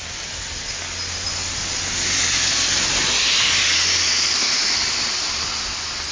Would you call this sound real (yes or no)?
yes